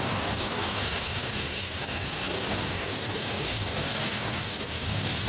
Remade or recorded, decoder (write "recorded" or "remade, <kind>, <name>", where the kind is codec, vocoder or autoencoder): remade, codec, DAC